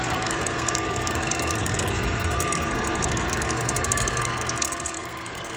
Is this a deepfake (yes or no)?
yes